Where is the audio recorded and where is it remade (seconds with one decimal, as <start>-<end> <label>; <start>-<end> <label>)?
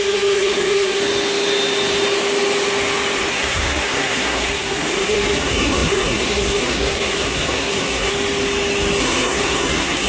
0.0-1.0 remade; 1.0-3.3 recorded; 3.3-8.1 remade; 8.1-9.0 recorded; 9.0-10.1 remade